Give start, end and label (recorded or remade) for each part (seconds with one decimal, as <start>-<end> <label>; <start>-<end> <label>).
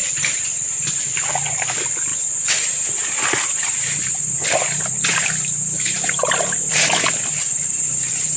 0.0-1.3 remade; 1.3-2.1 recorded; 2.1-6.7 remade; 6.7-8.4 recorded